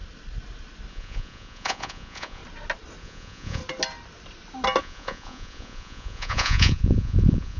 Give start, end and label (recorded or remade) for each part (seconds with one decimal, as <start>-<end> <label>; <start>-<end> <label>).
0.0-0.9 recorded; 0.9-2.4 remade; 2.4-3.0 recorded; 3.0-3.6 remade; 3.6-4.8 recorded; 4.8-7.6 remade

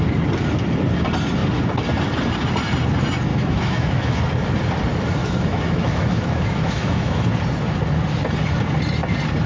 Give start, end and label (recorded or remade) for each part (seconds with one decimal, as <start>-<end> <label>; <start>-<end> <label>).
0.0-3.3 recorded; 3.3-4.2 remade; 4.2-5.2 recorded; 5.2-7.2 remade; 7.2-9.5 recorded

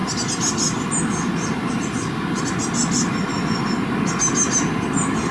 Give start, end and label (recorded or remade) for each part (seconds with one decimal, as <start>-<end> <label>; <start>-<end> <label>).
0.0-5.3 recorded

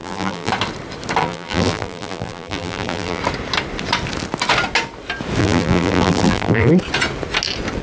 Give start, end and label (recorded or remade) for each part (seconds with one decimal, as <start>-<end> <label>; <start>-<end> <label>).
0.0-0.5 remade; 0.5-1.2 recorded; 1.2-3.2 remade; 3.2-5.4 recorded; 5.4-6.7 remade; 6.7-7.8 recorded

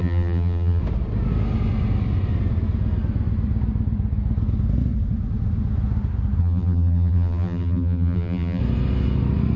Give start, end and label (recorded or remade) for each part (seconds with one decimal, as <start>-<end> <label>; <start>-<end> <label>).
0.0-0.8 remade; 0.8-6.4 recorded; 6.4-8.6 remade; 8.6-9.6 recorded

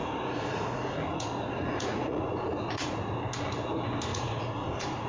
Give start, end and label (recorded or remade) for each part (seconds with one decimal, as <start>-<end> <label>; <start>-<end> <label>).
0.0-3.1 remade; 3.1-4.1 recorded; 4.1-5.1 remade

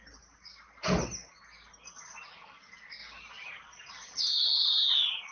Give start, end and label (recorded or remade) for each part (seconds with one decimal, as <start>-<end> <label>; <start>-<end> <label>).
0.0-5.3 recorded

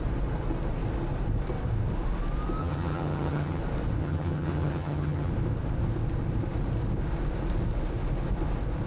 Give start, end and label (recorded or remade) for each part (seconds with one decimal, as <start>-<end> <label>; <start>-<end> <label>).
0.0-2.6 recorded; 2.6-3.6 remade; 3.6-4.0 recorded; 4.0-5.3 remade; 5.3-8.9 recorded